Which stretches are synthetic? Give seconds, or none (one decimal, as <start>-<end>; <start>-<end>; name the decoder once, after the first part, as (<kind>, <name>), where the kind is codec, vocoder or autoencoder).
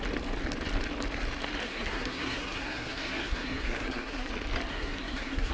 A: 1.6-4.3 (codec, SNAC); 4.7-5.5